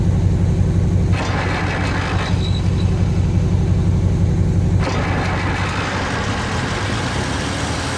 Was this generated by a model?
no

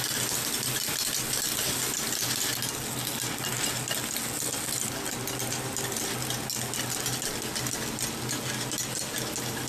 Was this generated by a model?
no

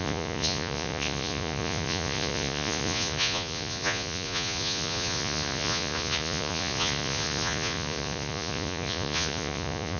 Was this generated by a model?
yes